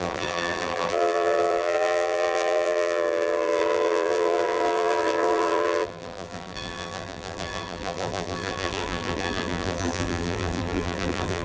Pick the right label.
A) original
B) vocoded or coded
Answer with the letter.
B